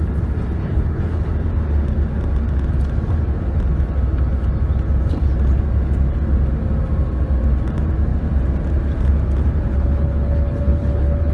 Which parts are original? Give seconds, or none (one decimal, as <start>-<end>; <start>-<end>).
0.0-0.6; 1.3-9.7